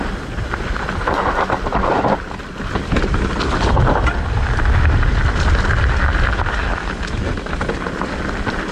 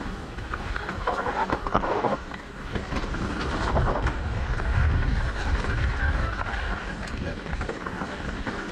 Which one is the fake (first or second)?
second